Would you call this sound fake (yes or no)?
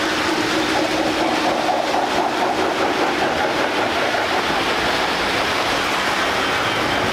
no